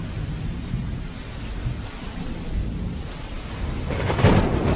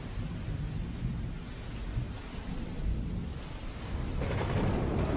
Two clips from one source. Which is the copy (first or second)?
first